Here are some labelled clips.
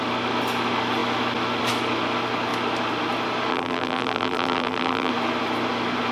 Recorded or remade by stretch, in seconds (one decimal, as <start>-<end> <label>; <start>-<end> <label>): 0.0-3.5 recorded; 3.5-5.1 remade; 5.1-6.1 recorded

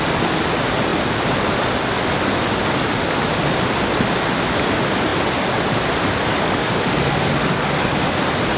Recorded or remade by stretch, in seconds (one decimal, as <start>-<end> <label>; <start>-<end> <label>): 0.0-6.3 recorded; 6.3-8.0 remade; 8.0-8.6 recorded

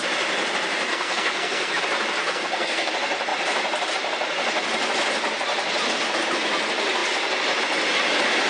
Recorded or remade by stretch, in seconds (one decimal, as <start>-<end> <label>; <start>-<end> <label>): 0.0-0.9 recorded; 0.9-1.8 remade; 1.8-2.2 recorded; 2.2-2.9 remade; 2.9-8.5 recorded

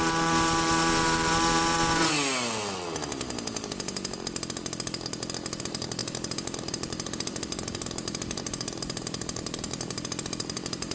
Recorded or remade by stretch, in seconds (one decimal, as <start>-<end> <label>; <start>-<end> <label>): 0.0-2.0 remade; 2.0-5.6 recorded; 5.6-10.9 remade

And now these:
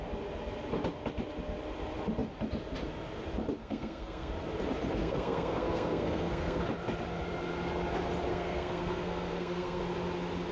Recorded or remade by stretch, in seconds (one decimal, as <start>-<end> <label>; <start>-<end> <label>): 0.0-3.6 recorded; 3.6-4.3 remade; 4.3-5.0 recorded; 5.0-6.6 remade; 6.6-8.3 recorded; 8.3-9.8 remade; 9.8-10.5 recorded

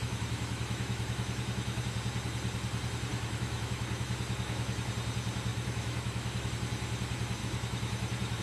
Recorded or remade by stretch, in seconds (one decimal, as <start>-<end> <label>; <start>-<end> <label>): 0.0-1.8 remade; 1.8-3.1 recorded; 3.1-4.9 remade; 4.9-5.5 recorded; 5.5-6.5 remade; 6.5-7.4 recorded; 7.4-8.4 remade